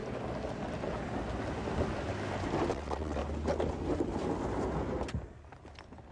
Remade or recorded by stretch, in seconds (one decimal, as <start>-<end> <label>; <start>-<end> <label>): 0.0-2.7 recorded; 2.7-3.2 remade; 3.2-6.1 recorded